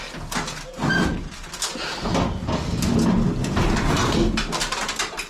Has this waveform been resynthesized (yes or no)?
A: no